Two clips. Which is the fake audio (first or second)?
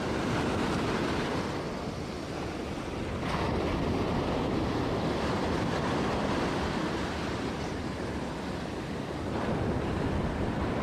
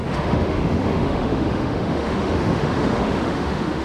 second